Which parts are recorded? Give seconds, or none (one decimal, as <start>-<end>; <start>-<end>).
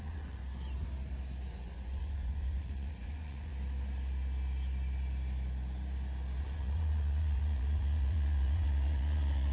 0.4-1.5; 3.5-6.4